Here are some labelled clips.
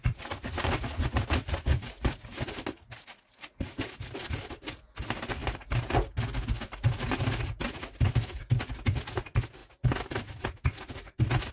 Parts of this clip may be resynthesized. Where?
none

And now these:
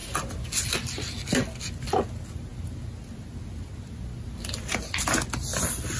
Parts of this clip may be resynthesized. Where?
none

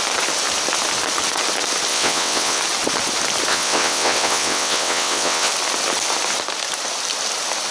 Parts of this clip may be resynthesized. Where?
1.9-2.6 (vocoder, WaveNeXt); 3.5-5.5

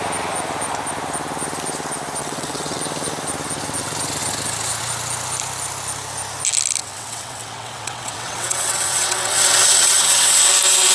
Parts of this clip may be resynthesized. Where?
2.2-2.8 (vocoder, WaveNeXt); 6.8-10.4

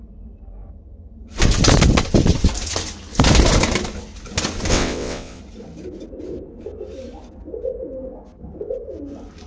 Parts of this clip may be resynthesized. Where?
4.7-5.4 (vocoder, WaveNeXt)

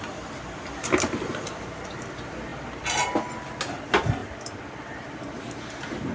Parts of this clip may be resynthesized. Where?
none

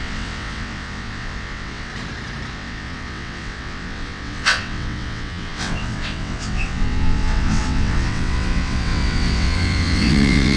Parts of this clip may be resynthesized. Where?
0.0-1.9 (vocoder, WaveNeXt); 2.5-10.6

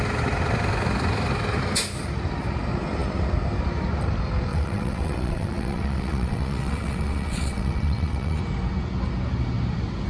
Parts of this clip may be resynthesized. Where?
4.5-8.4 (vocoder, WaveNeXt)